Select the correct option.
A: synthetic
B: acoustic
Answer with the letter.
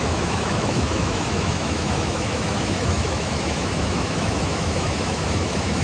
A